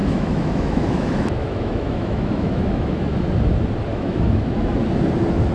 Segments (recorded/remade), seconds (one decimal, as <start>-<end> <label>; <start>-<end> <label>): 0.0-3.3 remade; 3.3-3.9 recorded; 3.9-4.8 remade; 4.8-5.5 recorded